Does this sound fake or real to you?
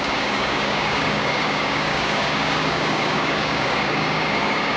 fake